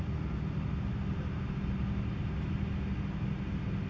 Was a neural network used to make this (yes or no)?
no